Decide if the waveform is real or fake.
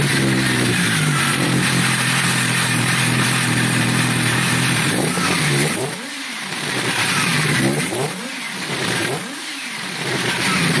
fake